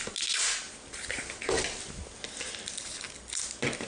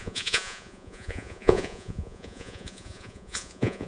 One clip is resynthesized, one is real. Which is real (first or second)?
first